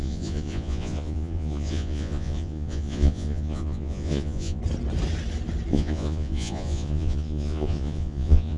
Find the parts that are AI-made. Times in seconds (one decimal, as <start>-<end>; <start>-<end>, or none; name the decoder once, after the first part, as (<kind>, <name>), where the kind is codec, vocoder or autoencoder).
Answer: 0.0-4.6 (vocoder, Vocos); 5.7-8.6